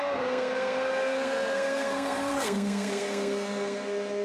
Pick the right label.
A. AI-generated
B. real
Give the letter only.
A